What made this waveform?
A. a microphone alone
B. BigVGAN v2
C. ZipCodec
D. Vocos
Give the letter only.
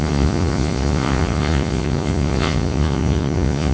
D